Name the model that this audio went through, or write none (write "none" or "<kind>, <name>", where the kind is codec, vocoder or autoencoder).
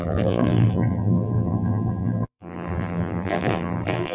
vocoder, BigVGAN v2